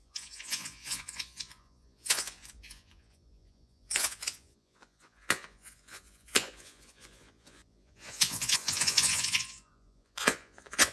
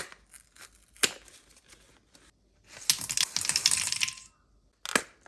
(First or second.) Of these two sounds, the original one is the second